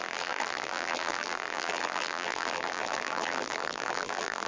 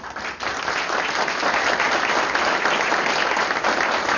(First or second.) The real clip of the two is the second